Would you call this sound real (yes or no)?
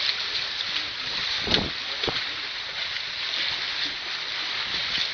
yes